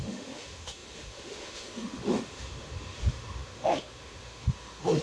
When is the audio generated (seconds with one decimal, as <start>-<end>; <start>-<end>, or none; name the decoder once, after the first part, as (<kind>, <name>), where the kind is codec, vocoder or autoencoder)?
0.0-5.0 (autoencoder, DAC-VAE)